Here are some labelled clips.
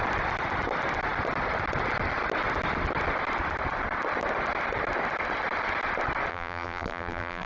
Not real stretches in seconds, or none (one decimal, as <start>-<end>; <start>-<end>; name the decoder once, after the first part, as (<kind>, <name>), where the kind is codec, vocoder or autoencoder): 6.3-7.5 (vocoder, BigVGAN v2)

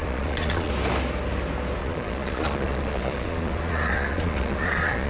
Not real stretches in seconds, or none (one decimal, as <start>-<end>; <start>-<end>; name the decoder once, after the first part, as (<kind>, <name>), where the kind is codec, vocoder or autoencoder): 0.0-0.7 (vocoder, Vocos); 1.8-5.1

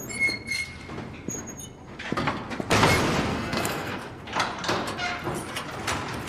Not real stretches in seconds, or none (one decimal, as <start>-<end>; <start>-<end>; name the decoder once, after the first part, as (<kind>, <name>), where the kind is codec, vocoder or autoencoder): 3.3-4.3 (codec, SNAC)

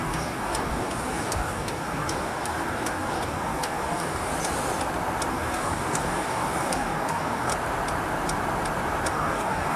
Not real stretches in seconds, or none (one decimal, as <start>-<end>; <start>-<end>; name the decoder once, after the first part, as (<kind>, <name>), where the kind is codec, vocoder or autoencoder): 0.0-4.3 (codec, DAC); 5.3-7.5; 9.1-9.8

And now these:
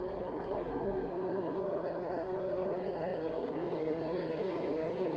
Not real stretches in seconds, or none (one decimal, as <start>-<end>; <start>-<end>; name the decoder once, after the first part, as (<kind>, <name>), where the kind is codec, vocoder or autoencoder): 0.0-5.2 (codec, SNAC)

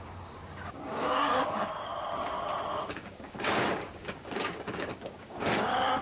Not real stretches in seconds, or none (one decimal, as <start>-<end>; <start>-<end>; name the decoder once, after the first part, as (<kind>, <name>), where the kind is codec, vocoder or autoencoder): 0.0-1.9 (codec, DAC); 2.8-6.0